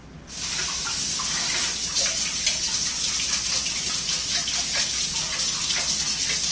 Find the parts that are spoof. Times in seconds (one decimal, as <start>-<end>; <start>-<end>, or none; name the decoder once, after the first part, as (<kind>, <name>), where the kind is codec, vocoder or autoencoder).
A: none

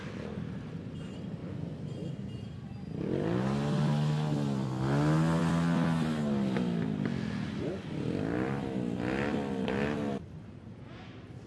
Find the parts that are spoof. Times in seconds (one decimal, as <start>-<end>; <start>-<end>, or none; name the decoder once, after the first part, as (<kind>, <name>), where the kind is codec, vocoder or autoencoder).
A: none

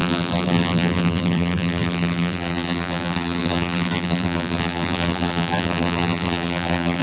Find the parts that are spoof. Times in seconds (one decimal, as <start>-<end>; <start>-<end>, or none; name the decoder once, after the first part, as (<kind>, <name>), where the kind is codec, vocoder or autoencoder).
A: 0.0-7.0 (vocoder, BigVGAN v2)

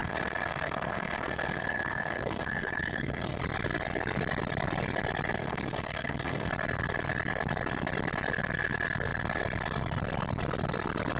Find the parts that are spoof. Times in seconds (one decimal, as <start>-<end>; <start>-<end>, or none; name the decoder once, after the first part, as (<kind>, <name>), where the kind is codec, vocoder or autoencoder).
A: 0.0-3.4 (codec, SNAC); 5.4-6.5

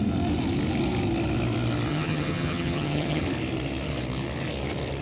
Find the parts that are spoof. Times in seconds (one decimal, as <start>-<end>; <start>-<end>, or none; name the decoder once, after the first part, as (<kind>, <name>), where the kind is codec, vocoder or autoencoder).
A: 1.9-3.2 (vocoder, HiFi-GAN)

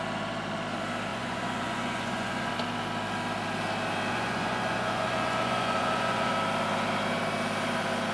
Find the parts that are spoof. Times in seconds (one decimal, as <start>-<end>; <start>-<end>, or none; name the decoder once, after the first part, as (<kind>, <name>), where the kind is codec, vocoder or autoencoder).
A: 1.1-2.5 (vocoder, Vocos); 4.1-6.3